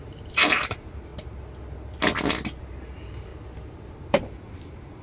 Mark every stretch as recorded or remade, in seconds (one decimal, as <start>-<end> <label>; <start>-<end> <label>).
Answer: 0.0-1.1 remade; 1.1-2.6 recorded; 2.6-3.3 remade; 3.3-4.1 recorded; 4.1-5.0 remade